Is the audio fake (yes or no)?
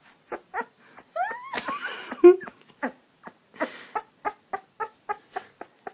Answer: no